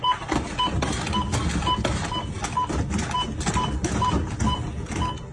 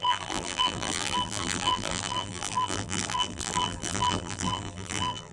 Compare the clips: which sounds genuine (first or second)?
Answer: first